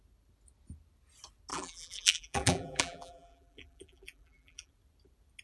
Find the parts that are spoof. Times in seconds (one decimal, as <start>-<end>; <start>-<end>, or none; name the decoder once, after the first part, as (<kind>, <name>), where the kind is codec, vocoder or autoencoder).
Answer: 1.5-4.7 (vocoder, BigVGAN v2)